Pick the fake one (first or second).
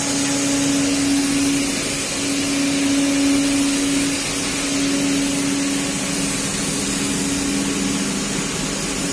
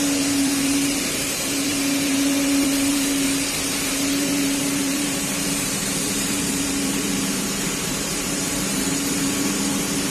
second